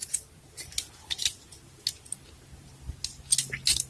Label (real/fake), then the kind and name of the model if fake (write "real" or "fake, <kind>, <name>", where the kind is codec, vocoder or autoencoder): real